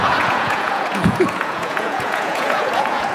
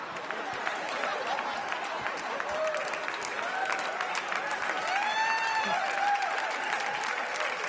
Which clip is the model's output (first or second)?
first